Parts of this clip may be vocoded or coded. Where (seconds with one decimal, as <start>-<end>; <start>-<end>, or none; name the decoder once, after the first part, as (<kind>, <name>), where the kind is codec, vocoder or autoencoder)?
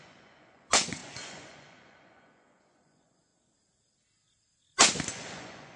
0.0-3.3 (vocoder, Vocos); 5.1-5.8